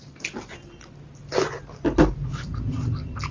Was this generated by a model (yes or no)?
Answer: no